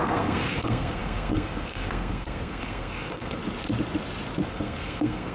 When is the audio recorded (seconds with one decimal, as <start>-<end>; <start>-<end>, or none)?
3.4-4.4